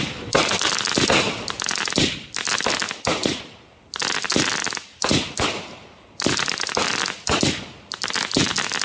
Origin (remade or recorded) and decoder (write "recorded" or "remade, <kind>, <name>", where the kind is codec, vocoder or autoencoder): recorded